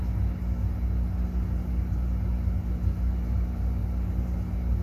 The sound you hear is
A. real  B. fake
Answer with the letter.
A